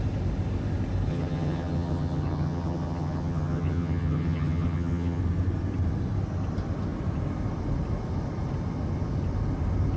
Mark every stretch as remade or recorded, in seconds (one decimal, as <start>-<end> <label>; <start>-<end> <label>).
0.0-1.1 recorded; 1.1-5.2 remade; 5.2-10.0 recorded